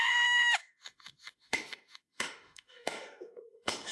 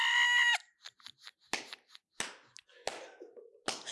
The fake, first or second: first